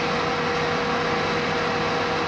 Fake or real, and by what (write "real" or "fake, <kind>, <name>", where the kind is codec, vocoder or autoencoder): real